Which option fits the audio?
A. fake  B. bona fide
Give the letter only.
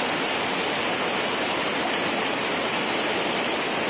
B